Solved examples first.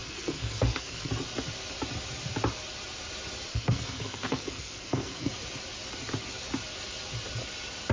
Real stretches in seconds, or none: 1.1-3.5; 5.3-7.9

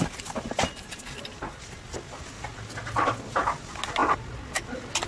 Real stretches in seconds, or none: 0.0-5.1

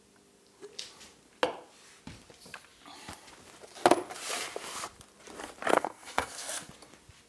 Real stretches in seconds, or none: 0.0-5.7; 6.7-7.3

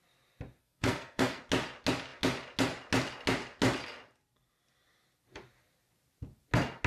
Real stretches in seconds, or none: 0.0-0.6; 1.4-6.9

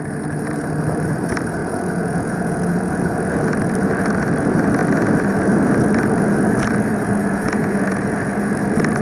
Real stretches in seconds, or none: 0.0-1.6; 3.0-7.2; 8.5-9.0

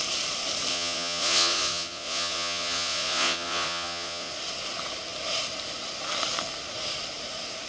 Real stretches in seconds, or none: 0.0-0.7; 4.3-7.7